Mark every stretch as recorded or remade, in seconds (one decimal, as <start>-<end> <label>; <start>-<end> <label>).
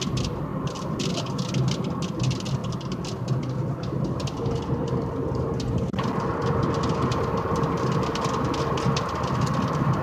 0.0-2.6 recorded; 2.6-4.6 remade; 4.6-10.0 recorded